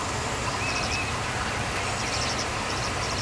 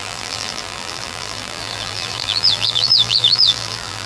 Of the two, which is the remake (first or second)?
second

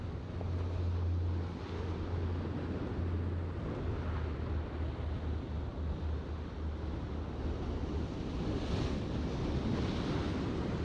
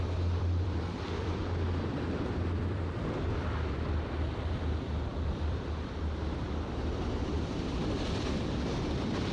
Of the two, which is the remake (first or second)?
second